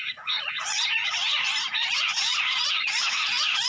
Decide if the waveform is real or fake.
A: fake